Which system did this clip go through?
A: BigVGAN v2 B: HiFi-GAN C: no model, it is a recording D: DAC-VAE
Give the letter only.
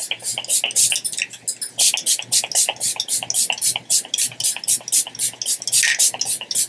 C